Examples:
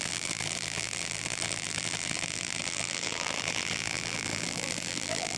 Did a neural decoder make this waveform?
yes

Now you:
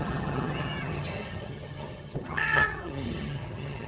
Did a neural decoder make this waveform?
yes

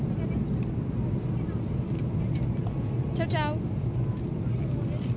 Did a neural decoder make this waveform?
no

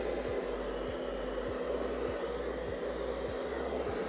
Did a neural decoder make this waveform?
no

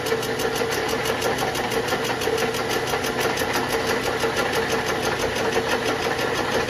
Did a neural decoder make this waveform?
no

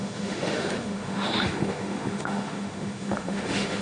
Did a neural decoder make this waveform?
yes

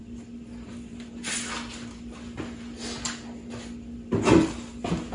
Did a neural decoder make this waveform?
no